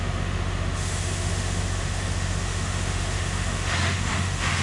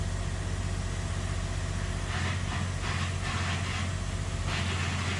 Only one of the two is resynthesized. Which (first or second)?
first